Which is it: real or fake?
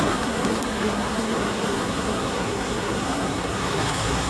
fake